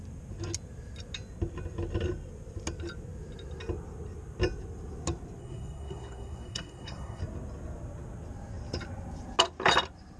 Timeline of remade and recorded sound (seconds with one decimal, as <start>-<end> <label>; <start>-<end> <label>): 0.0-5.4 recorded; 5.4-7.2 remade; 7.2-10.2 recorded